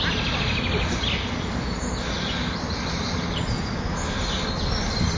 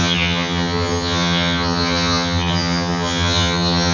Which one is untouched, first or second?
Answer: first